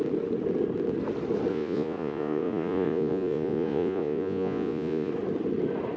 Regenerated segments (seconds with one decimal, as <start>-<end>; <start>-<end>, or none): 1.5-5.1